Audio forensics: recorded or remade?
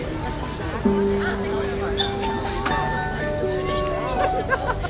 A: recorded